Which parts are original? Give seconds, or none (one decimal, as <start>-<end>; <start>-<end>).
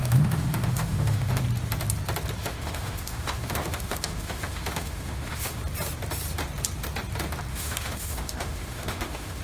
1.4-2.4; 5.6-7.5